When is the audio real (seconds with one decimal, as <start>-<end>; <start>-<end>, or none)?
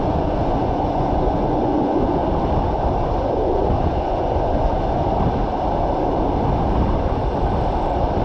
2.2-3.2; 5.0-8.2